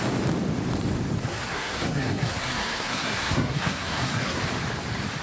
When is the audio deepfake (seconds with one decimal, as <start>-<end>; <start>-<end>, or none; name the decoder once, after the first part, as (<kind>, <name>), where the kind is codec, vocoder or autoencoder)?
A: 1.3-4.4 (codec, SNAC)